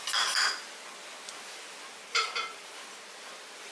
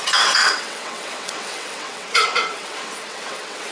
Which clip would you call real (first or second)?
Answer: first